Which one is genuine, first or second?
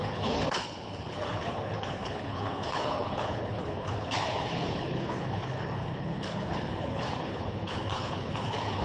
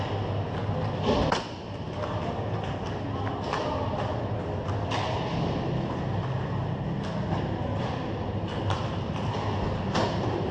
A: second